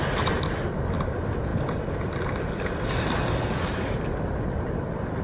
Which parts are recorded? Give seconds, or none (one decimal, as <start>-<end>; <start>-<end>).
0.0-5.2